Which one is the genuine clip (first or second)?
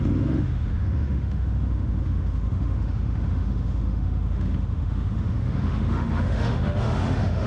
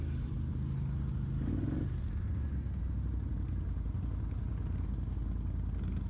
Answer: second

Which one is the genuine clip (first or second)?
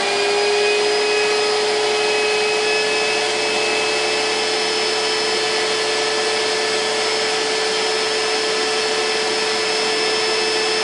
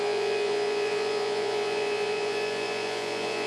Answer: first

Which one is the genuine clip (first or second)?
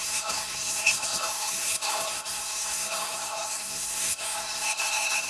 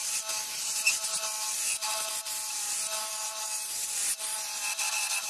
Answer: second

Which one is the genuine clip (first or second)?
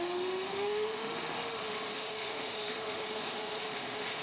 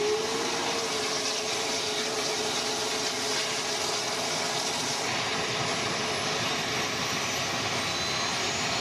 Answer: second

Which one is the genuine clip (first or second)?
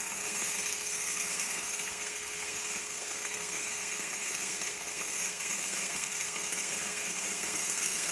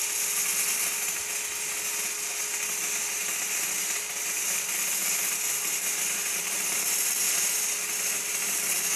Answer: second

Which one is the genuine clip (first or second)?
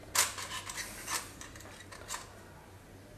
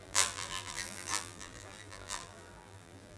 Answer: first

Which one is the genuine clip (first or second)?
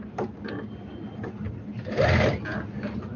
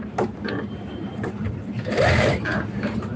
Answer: first